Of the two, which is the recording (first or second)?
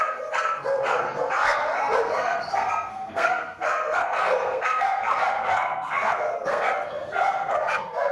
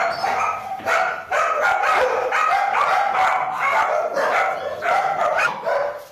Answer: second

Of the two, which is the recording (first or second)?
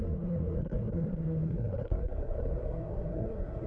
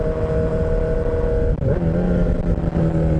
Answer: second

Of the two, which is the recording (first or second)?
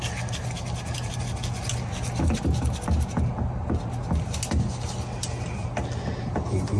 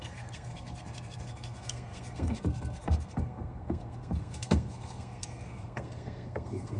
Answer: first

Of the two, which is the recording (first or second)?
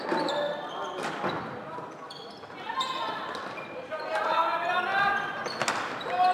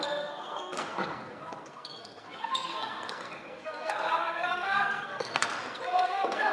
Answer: first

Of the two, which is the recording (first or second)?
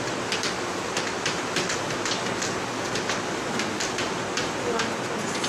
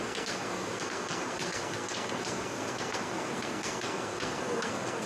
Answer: first